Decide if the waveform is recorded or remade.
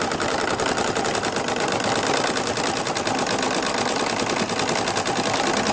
remade